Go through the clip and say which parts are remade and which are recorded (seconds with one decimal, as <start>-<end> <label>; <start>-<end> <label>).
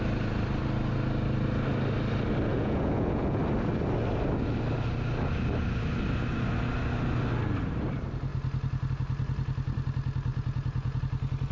0.0-2.5 recorded; 2.5-3.4 remade; 3.4-10.3 recorded; 10.3-11.0 remade; 11.0-11.5 recorded